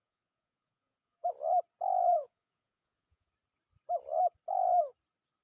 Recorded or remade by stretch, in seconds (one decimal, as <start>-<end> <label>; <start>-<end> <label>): 0.0-1.3 remade; 1.3-2.1 recorded; 2.1-3.3 remade; 3.3-5.4 recorded